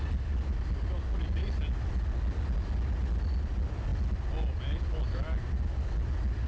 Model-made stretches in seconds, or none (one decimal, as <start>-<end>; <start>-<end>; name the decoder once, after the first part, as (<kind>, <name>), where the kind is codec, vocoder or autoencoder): none